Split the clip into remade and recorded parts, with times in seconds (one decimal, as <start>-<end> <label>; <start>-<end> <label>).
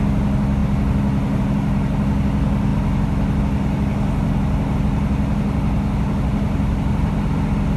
0.0-7.8 recorded